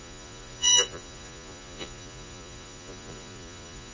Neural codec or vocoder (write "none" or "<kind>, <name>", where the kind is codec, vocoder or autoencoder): vocoder, Vocos